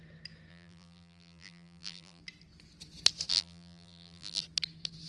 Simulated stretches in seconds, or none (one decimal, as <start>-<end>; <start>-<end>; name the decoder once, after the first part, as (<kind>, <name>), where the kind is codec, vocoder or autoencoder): 0.5-2.2 (vocoder, BigVGAN v2); 3.3-4.4